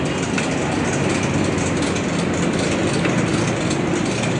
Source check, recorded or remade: recorded